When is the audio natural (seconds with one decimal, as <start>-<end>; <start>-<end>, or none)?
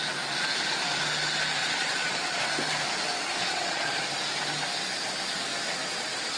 0.0-1.6; 2.4-3.4; 4.0-6.4